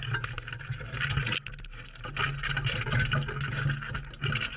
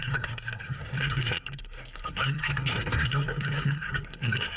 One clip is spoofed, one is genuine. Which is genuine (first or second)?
first